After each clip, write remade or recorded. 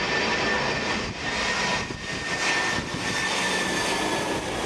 recorded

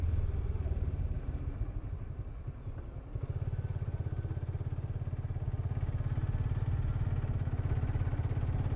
recorded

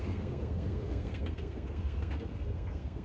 remade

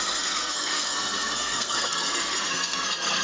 remade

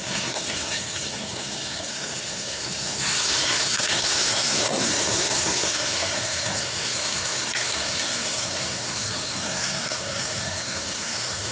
remade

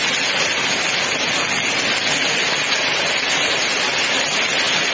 recorded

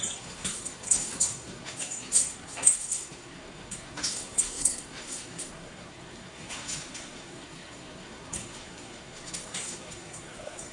remade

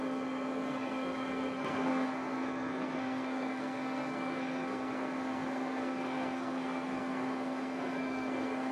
remade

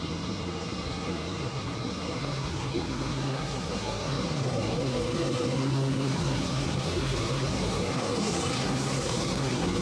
remade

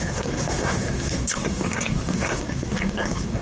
remade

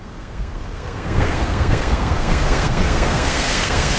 remade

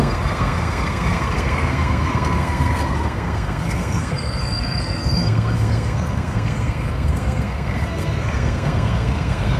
remade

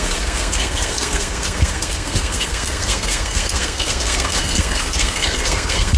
remade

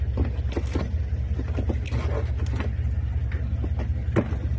recorded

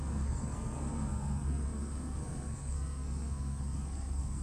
remade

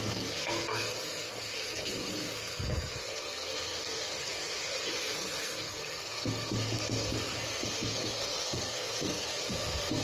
remade